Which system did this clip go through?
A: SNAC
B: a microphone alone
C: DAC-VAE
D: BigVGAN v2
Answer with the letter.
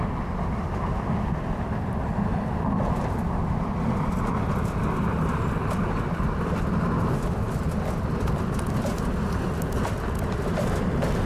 B